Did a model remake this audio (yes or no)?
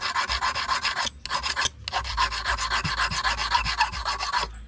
no